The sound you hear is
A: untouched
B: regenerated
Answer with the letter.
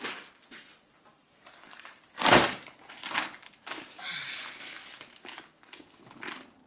A